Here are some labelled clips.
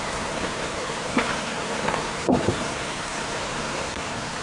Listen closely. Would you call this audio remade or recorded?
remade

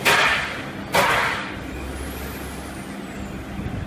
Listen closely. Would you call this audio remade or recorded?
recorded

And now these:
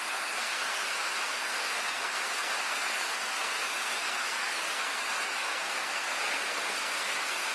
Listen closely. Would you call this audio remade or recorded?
remade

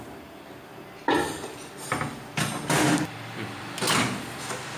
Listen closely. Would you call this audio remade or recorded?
recorded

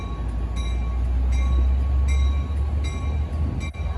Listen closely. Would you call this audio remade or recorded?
recorded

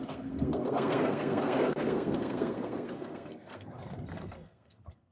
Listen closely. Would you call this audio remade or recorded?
remade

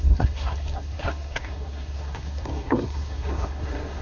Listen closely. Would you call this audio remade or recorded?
remade